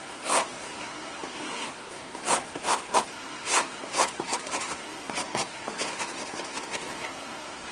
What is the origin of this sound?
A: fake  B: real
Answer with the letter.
A